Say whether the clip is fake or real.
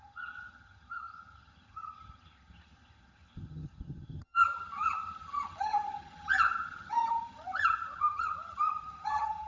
fake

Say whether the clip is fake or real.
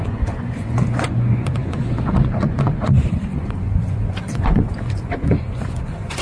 fake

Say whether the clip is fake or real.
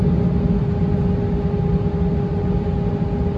real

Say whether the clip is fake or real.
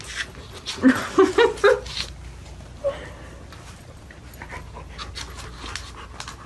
real